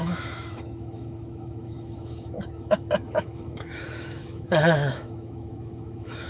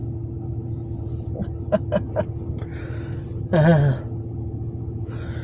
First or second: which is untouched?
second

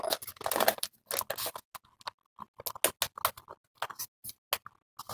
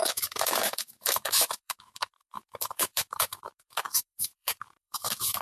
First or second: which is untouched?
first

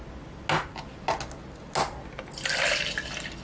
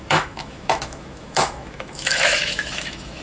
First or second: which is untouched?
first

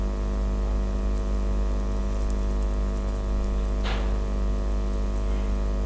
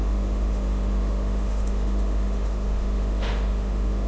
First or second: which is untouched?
first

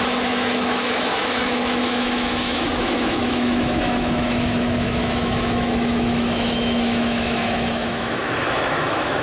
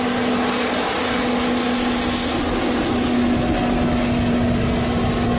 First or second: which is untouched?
second